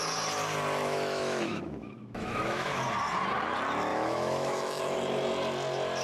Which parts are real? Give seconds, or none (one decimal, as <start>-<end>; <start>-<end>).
0.0-0.8; 2.8-3.9; 4.8-6.0